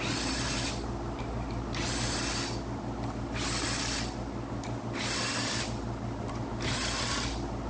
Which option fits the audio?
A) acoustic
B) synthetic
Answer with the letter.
A